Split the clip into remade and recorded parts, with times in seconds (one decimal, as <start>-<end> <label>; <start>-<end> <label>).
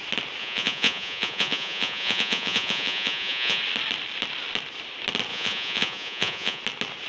0.0-0.4 recorded; 0.4-3.6 remade; 3.6-5.3 recorded; 5.3-6.6 remade; 6.6-7.1 recorded